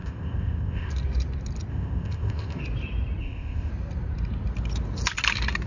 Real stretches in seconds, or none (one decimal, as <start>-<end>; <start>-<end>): 0.9-1.7; 2.6-3.2; 3.7-5.7